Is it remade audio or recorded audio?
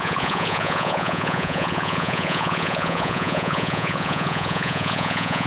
remade